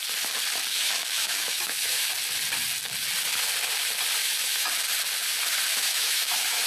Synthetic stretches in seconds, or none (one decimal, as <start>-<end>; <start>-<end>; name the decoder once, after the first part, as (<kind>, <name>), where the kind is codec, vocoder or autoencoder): 0.7-2.1 (autoencoder, DAC-VAE); 4.2-4.7; 5.7-6.7